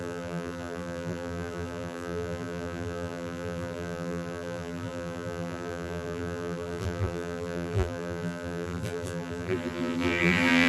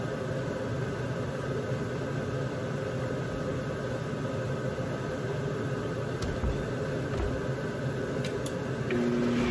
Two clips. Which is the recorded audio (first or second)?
second